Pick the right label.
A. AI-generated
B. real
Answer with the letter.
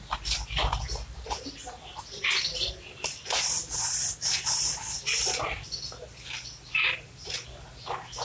B